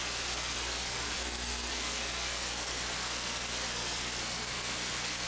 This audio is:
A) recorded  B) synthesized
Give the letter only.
B